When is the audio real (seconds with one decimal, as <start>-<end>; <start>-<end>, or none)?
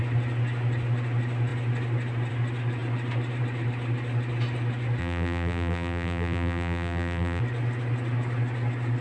0.0-5.0; 7.4-9.0